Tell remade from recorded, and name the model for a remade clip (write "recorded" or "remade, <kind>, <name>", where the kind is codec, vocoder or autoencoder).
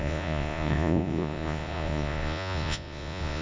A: remade, vocoder, Vocos